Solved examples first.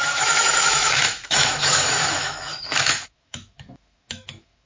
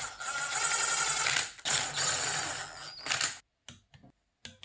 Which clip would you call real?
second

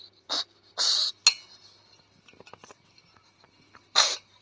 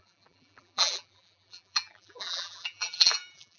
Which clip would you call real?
first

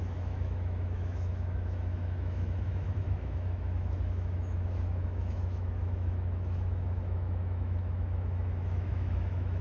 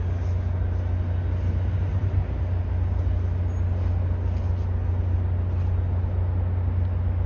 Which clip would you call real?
second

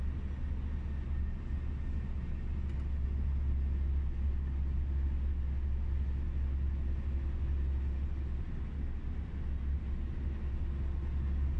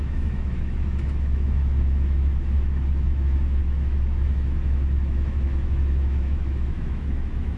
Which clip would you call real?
first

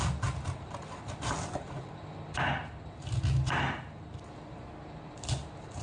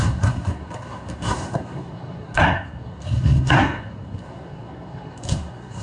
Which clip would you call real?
first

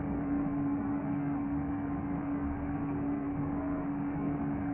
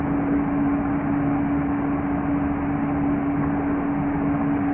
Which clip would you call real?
second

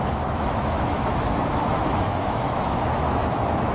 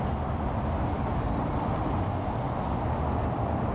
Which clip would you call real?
second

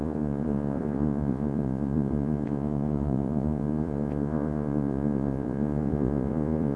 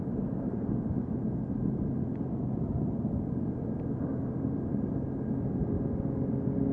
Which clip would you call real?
second